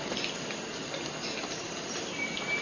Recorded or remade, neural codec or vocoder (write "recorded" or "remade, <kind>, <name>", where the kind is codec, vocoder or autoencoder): recorded